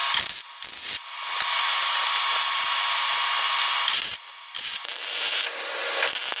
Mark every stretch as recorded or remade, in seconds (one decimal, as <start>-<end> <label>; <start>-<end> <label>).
0.0-1.0 recorded; 1.0-6.4 remade